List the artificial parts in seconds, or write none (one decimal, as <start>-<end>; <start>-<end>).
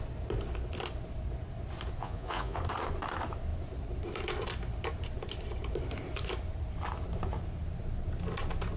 2.0-2.6